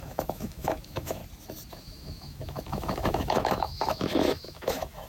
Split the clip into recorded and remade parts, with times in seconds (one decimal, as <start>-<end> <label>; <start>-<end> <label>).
0.0-1.2 remade; 1.2-1.7 recorded; 1.7-5.1 remade